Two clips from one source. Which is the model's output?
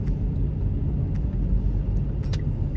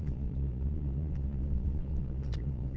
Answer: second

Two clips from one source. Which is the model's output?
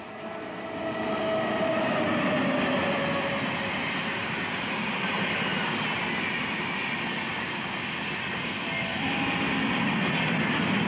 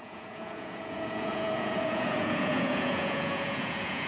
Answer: second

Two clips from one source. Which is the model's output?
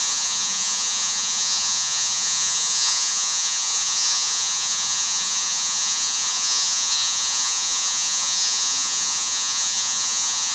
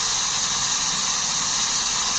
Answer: first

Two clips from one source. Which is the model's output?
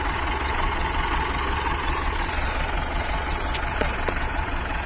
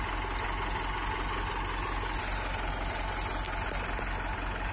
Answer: first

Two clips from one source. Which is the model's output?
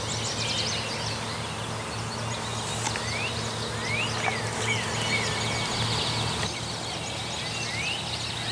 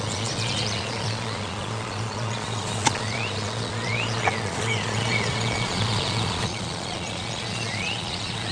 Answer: second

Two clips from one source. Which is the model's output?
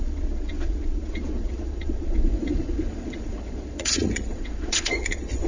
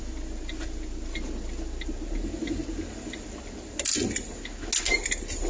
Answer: first